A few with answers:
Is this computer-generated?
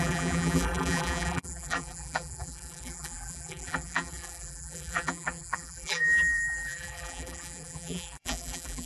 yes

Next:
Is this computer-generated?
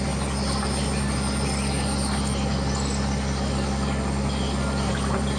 no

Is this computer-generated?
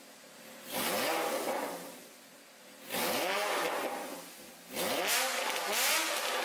no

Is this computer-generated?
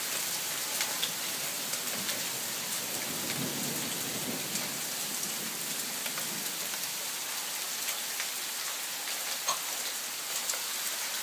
no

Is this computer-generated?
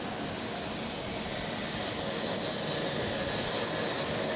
no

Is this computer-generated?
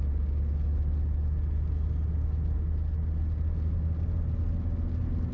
no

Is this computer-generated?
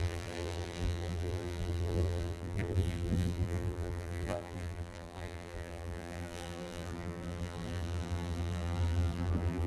yes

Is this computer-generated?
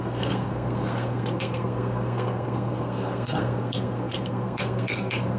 yes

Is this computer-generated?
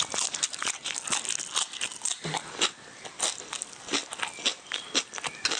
no